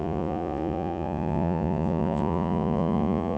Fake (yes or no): yes